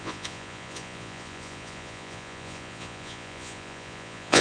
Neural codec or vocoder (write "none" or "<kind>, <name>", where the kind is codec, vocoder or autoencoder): vocoder, Vocos